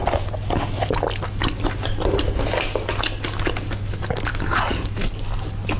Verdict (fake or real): real